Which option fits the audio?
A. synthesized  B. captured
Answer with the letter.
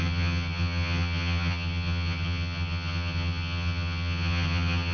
A